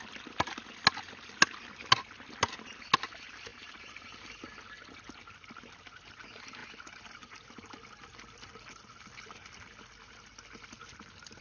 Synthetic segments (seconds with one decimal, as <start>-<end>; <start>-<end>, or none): 3.5-4.2